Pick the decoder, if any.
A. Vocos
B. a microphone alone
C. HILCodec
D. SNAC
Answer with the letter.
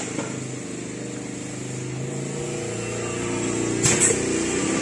B